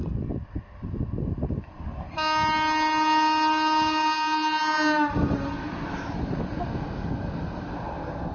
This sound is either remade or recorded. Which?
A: recorded